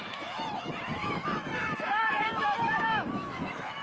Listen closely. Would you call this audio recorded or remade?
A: remade